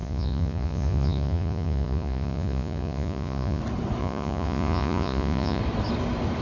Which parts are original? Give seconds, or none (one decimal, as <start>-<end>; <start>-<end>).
3.6-4.0; 5.6-6.4